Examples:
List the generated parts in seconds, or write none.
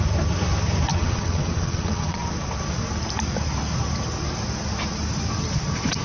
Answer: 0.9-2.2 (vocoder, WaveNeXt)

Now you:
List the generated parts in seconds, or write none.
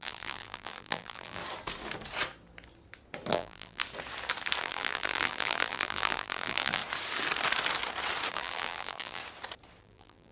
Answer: 0.0-1.4 (vocoder, BigVGAN v2); 3.3-3.8; 4.6-6.8; 8.3-9.2; 9.8-10.3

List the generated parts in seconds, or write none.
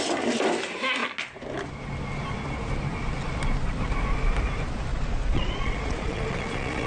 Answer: 4.9-6.9 (vocoder, Vocos)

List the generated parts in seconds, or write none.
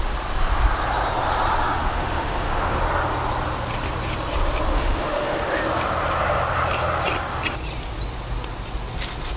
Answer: 1.8-2.8 (autoencoder, DAC-VAE); 4.7-5.6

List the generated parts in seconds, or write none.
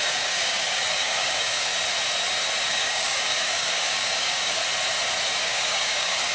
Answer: 0.0-1.7 (codec, DAC); 2.7-4.6; 5.4-6.3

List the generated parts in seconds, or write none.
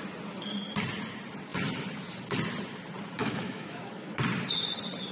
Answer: 3.2-4.2 (autoencoder, DAC-VAE)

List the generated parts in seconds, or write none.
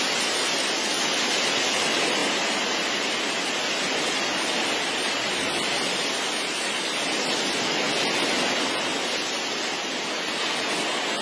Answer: none